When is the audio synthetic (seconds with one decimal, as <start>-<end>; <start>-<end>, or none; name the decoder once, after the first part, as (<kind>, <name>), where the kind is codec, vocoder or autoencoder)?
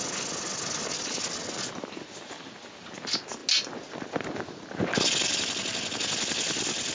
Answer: none